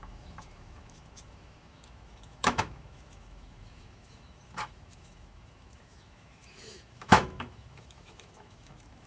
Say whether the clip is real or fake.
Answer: fake